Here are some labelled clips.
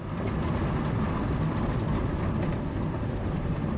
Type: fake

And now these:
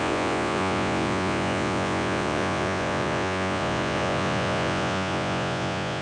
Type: fake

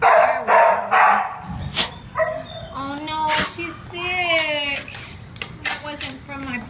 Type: real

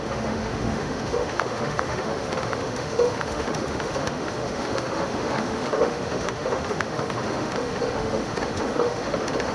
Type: fake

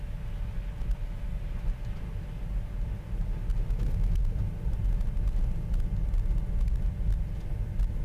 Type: real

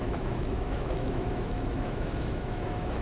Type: fake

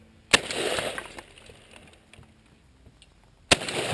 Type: real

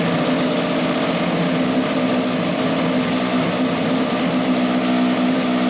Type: real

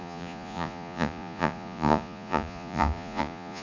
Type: fake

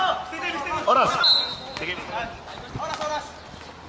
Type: real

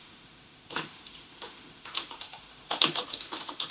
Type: fake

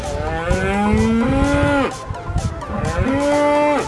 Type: real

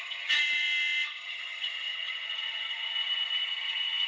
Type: fake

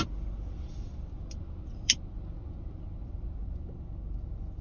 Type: real